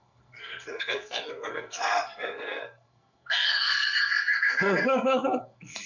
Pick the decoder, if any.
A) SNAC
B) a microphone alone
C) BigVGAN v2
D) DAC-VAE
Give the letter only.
A